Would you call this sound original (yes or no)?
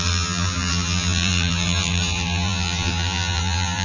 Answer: no